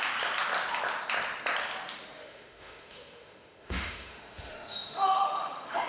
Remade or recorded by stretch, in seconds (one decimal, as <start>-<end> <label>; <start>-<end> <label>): 0.0-2.2 recorded; 2.2-5.9 remade